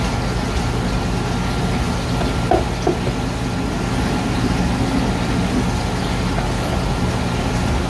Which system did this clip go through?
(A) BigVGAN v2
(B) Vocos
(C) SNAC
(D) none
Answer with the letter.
D